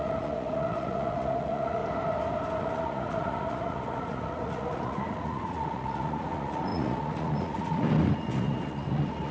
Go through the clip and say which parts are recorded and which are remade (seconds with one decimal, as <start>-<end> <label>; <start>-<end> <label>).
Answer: 0.0-1.8 remade; 1.8-2.6 recorded; 2.6-9.3 remade